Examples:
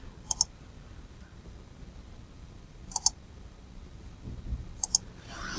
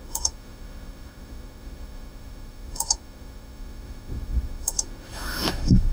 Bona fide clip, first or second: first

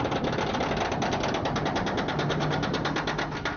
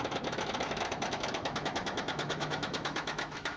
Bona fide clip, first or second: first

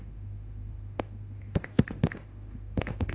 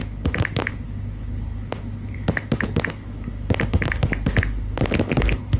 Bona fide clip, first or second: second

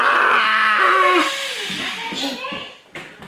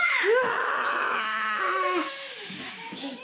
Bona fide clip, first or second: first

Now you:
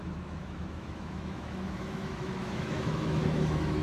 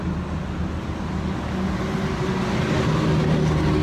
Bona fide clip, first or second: second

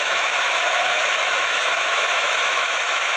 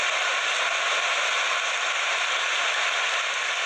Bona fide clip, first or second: second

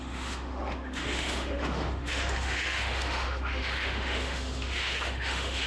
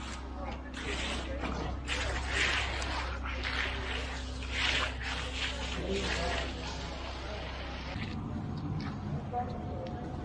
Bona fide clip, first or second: second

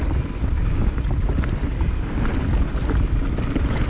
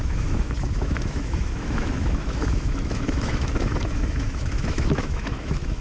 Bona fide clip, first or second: first